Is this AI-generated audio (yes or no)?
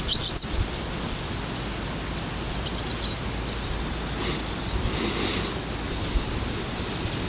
no